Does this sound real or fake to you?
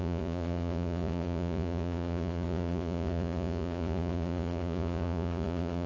fake